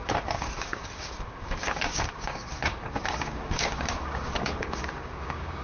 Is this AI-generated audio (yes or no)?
yes